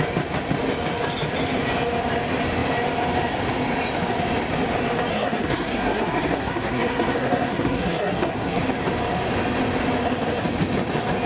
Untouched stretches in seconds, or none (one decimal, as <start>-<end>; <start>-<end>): 0.0-5.1; 8.6-11.3